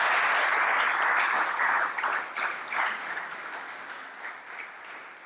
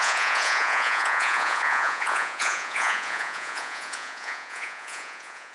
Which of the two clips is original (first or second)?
first